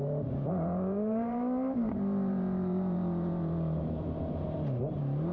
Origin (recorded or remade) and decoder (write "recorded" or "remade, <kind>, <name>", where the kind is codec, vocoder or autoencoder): remade, vocoder, BigVGAN v2